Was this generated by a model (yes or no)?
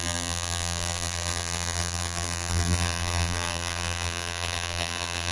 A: yes